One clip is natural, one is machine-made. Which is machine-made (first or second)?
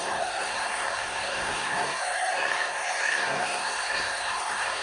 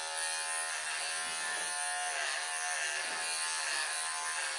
first